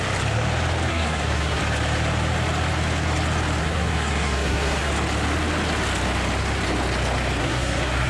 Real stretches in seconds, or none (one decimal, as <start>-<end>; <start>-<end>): 0.0-0.9; 1.6-3.6; 4.9-7.4